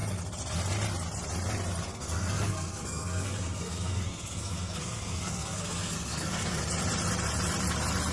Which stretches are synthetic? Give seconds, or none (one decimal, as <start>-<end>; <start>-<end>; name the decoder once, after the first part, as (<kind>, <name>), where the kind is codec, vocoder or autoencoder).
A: 1.9-6.6 (codec, SNAC)